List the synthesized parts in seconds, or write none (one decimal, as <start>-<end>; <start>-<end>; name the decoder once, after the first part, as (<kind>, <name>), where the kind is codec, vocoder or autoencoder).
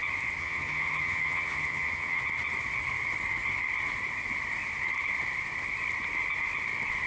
0.4-2.2 (vocoder, HiFi-GAN)